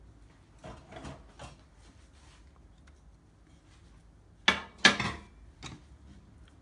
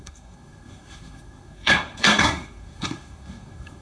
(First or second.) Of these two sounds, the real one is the first